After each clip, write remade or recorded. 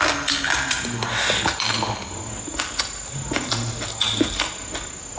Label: recorded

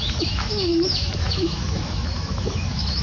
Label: remade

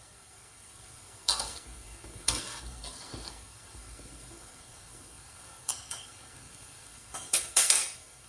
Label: remade